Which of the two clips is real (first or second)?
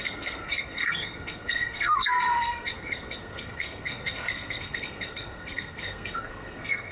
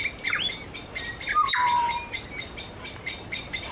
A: second